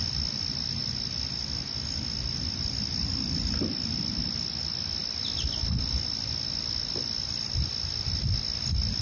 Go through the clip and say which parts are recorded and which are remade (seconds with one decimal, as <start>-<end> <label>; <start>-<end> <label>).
0.0-9.0 recorded